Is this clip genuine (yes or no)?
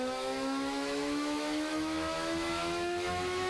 no